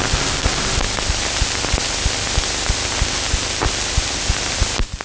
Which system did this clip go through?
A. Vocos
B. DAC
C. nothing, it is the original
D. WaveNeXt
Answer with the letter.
C